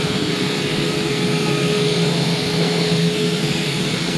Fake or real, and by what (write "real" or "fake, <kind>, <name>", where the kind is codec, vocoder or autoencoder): fake, codec, SNAC